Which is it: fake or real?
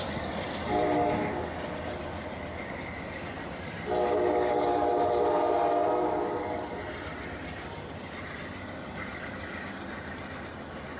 real